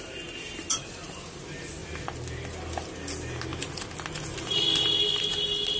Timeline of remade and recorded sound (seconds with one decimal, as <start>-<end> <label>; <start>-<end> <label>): 0.0-5.8 recorded